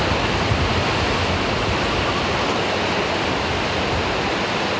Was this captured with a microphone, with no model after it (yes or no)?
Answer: yes